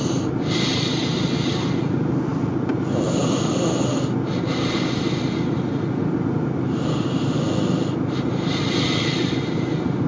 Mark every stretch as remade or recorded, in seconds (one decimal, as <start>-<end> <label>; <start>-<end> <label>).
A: 0.0-10.1 recorded